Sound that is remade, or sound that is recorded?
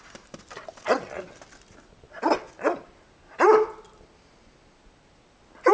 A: recorded